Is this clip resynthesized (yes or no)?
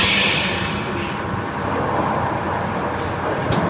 yes